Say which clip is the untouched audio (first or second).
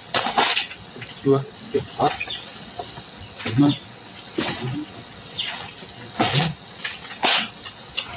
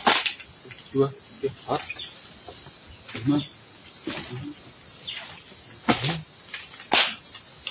second